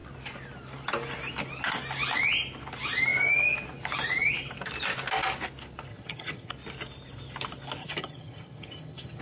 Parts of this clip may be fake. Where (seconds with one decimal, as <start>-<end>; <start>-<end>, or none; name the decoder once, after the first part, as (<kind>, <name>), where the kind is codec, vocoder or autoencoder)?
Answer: 5.9-6.5 (vocoder, HiFi-GAN); 7.8-9.2